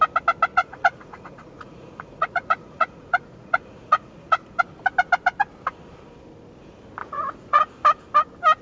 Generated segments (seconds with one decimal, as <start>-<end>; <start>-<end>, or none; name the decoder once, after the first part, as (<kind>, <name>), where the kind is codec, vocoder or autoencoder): 0.5-4.6 (vocoder, Vocos); 7.0-7.6